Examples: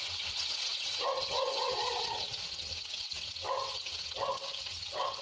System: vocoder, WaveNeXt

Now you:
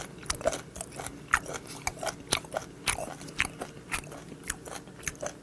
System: none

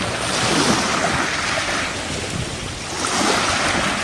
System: none